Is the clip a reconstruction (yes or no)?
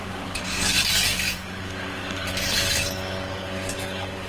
yes